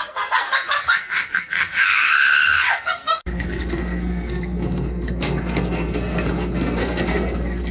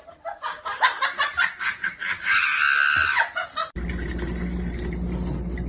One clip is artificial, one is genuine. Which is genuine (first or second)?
second